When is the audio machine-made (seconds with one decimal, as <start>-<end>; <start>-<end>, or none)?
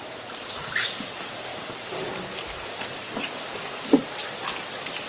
none